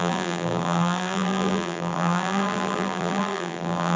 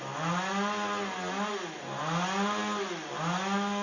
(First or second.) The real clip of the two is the second